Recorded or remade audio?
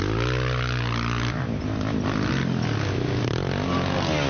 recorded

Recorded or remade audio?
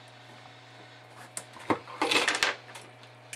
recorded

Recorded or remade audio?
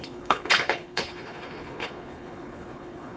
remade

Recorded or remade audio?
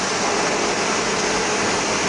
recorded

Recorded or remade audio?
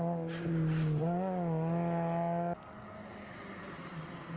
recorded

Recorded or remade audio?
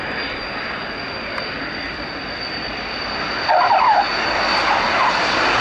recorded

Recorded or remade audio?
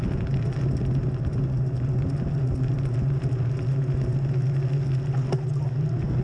recorded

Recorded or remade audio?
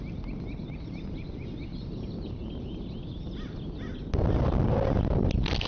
recorded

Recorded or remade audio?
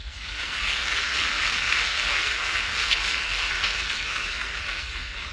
remade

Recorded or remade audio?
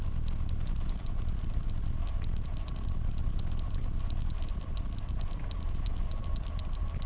recorded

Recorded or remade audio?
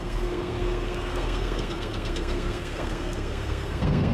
remade